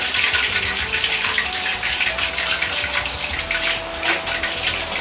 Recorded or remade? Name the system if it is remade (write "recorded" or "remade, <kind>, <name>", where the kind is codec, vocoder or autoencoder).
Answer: recorded